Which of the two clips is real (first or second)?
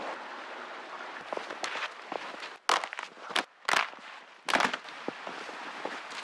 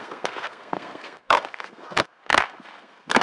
first